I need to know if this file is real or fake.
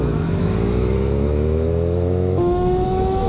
fake